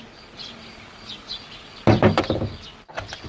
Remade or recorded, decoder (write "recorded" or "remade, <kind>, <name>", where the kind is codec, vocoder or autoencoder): recorded